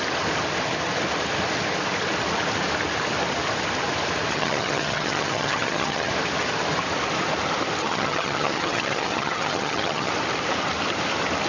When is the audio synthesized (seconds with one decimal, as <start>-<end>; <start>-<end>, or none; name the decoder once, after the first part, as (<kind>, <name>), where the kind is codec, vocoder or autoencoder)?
4.3-6.1 (vocoder, HiFi-GAN); 7.8-10.1